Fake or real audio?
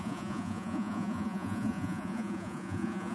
fake